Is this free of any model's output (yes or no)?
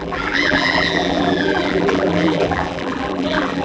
no